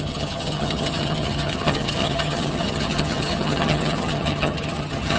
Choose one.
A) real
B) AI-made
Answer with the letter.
B